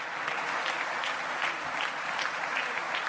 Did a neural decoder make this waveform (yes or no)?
no